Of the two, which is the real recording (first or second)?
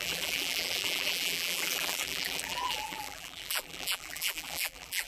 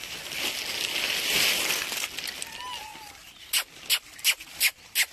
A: second